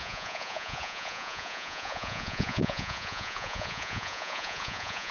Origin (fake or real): fake